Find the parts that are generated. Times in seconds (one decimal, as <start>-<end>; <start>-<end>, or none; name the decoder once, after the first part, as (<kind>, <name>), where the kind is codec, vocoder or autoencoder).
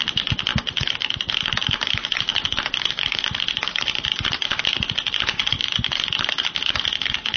none